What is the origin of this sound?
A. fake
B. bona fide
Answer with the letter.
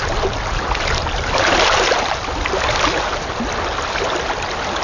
B